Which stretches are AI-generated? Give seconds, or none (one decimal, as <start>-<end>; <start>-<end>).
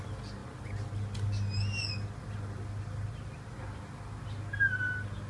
none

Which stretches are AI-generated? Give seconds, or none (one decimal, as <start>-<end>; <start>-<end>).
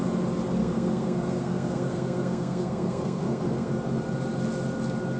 0.6-3.7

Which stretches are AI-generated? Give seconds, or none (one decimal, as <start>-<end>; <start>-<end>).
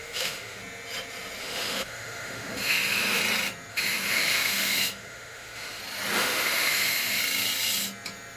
0.0-0.6; 1.4-3.2; 3.7-5.8; 6.2-7.2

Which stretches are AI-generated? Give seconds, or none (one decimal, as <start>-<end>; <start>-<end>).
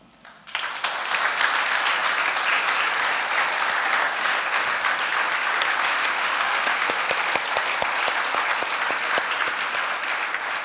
5.7-7.0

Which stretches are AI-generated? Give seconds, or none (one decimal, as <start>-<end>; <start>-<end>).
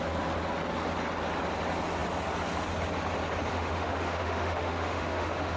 3.5-5.6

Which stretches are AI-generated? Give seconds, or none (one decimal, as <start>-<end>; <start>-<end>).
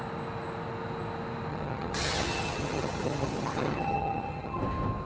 1.5-4.6